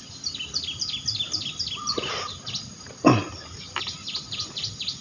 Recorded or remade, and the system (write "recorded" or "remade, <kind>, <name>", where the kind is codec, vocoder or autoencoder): recorded